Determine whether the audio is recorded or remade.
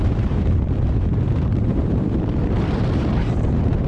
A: remade